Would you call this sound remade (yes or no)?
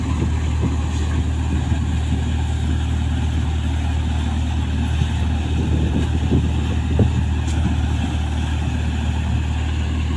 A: no